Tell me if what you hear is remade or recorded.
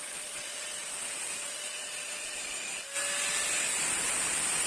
recorded